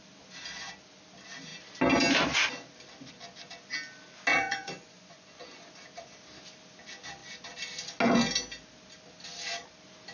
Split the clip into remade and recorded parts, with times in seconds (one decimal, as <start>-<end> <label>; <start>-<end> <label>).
0.0-4.3 recorded; 4.3-5.6 remade; 5.6-10.1 recorded